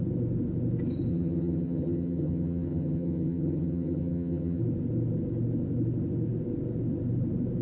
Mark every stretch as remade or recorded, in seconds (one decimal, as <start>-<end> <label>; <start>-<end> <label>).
0.0-1.1 recorded; 1.1-4.6 remade; 4.6-7.6 recorded